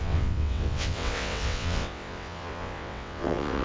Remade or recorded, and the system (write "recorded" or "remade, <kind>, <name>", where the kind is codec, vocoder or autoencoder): remade, vocoder, WaveNeXt